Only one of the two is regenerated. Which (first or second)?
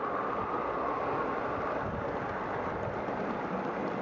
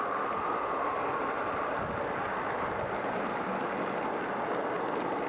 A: first